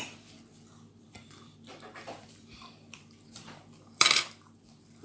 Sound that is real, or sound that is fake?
fake